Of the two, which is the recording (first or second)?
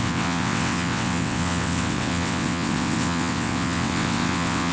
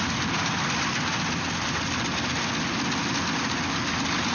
second